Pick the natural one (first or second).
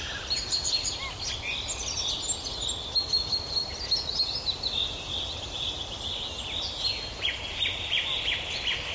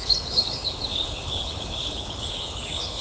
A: first